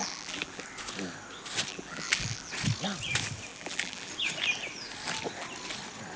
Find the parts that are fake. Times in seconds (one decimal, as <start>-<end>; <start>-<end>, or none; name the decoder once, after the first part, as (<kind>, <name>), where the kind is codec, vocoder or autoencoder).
0.0-0.6 (vocoder, BigVGAN v2); 1.7-2.5; 3.5-4.1